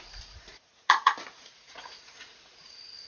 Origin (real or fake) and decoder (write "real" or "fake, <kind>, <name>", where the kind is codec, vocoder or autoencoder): fake, vocoder, Vocos